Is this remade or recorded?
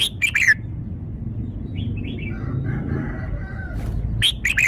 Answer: recorded